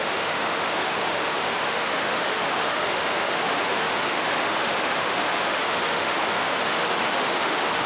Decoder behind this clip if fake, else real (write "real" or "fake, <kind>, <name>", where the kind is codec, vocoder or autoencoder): fake, autoencoder, DAC-VAE